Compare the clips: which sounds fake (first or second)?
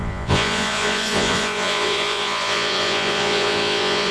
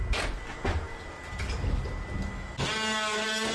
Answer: first